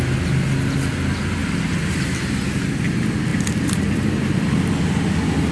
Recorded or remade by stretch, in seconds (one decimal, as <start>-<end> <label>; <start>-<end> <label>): 0.0-3.3 recorded; 3.3-4.3 remade; 4.3-5.5 recorded